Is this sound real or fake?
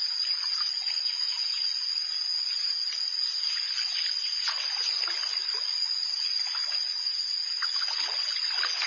real